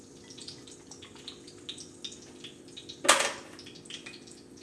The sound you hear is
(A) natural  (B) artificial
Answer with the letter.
A